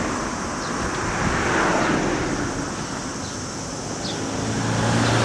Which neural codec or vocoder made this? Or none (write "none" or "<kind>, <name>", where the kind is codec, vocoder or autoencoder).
none